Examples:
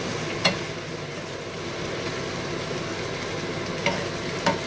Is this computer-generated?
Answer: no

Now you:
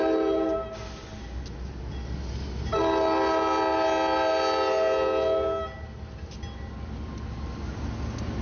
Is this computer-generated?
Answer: no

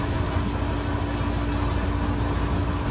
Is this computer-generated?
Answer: no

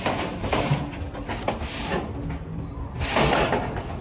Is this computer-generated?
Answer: no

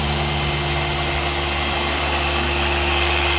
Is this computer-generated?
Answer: no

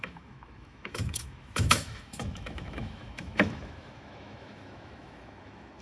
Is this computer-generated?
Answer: yes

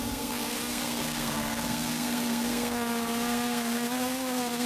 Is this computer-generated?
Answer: yes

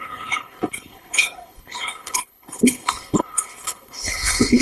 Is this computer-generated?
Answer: yes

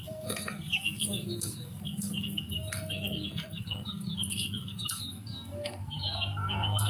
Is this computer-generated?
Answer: yes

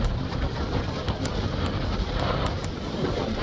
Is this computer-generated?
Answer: no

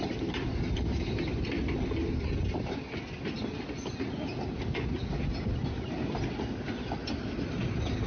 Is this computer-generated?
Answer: no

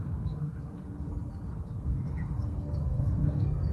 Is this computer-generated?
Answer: yes